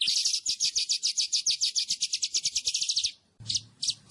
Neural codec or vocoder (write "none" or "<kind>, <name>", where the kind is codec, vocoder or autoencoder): none